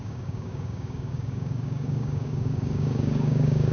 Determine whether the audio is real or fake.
fake